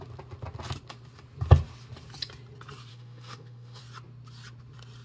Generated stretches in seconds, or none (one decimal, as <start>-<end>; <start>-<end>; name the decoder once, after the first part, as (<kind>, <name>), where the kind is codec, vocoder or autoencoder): 2.9-3.8 (autoencoder, DAC-VAE)